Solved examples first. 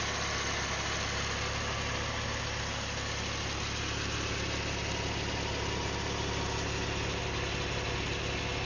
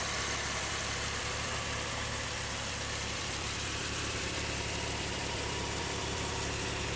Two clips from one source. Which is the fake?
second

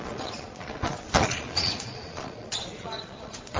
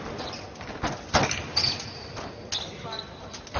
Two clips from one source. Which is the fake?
first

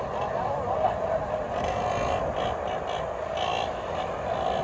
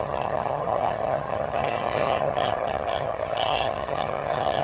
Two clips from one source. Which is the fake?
second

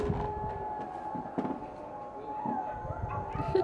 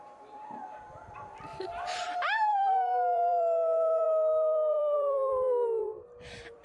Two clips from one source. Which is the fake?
second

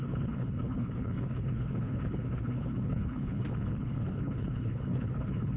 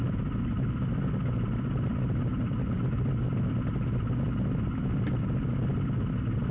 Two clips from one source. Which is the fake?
first